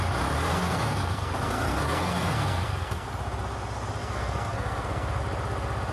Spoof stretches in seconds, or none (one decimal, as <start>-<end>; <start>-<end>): 0.5-3.1; 4.0-5.2